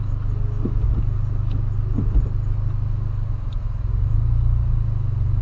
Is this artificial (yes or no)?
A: no